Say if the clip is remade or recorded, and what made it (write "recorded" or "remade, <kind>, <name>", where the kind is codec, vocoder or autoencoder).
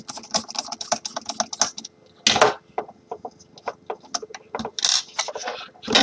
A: recorded